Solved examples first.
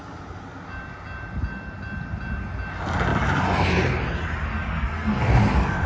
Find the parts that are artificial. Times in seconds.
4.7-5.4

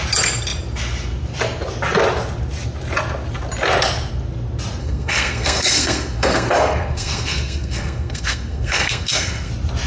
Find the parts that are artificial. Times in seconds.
4.8-9.5

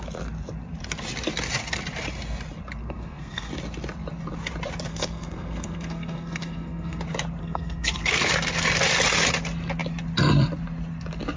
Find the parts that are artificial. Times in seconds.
2.8-3.5; 4.9-7.0; 7.4-8.3

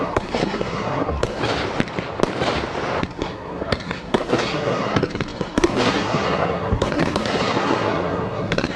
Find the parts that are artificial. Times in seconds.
0.0-1.4; 3.0-8.8

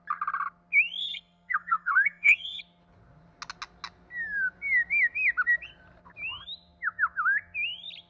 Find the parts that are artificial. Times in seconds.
1.0-2.6

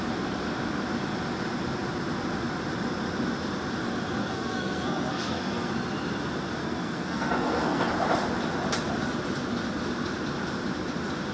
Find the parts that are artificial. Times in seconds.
4.2-5.7; 6.6-7.9

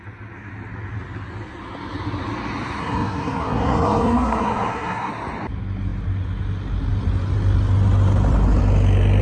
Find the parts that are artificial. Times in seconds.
2.8-5.1